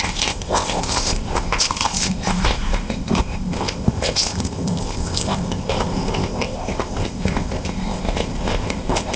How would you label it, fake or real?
fake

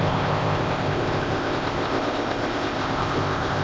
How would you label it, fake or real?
fake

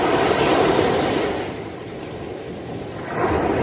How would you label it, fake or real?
real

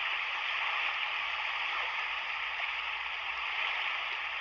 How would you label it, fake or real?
real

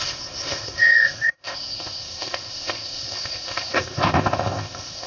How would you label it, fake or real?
fake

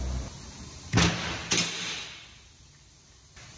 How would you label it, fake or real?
real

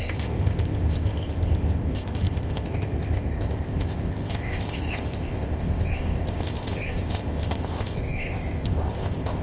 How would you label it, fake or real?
fake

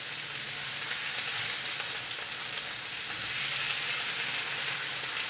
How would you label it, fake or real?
real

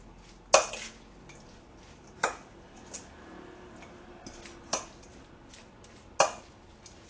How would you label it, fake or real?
real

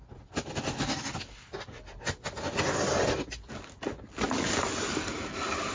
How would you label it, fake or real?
real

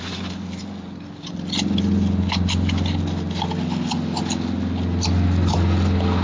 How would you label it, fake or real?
real